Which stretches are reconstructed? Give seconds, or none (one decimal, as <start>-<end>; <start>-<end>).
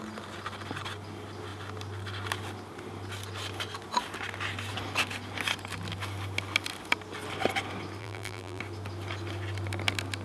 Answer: 8.0-8.6